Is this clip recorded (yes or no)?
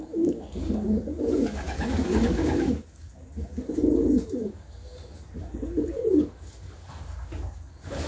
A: no